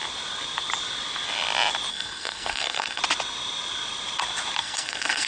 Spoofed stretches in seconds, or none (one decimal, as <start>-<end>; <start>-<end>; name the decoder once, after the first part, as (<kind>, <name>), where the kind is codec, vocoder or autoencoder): 1.9-3.0 (codec, SNAC); 4.6-5.3